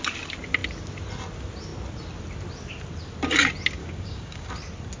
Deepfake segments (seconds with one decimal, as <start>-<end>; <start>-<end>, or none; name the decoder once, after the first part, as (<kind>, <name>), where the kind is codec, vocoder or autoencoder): 3.8-4.5 (codec, DAC)